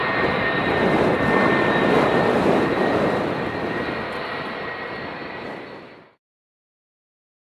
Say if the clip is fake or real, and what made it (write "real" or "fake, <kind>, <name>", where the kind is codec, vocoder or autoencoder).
real